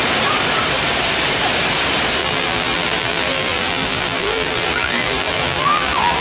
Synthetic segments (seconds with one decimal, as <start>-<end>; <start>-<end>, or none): 2.2-6.2